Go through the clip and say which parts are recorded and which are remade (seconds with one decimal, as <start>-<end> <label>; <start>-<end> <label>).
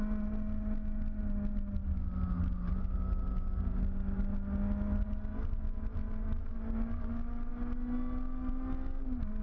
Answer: 0.0-9.4 recorded